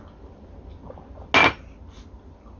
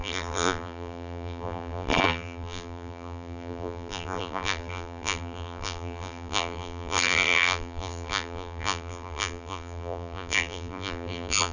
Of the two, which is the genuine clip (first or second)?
first